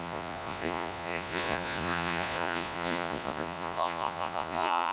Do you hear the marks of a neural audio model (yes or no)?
yes